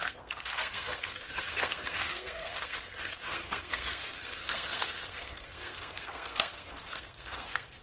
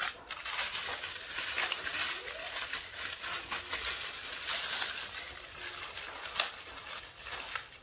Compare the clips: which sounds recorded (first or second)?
second